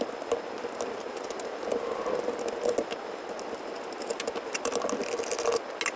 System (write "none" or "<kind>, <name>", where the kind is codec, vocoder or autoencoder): none